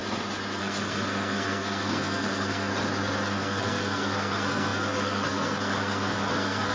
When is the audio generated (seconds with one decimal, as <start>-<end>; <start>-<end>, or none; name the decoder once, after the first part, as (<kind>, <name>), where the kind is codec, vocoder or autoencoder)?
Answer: 0.6-2.7 (codec, SNAC); 3.3-6.7